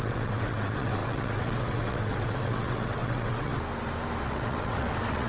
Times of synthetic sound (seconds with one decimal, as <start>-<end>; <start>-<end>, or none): 0.0-3.5; 4.2-5.3